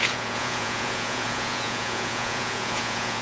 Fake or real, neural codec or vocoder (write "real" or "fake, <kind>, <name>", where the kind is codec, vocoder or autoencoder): fake, vocoder, Vocos